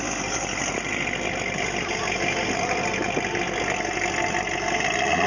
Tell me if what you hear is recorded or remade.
recorded